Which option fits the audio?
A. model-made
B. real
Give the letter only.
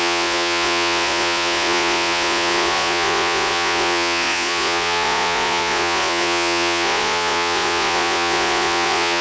A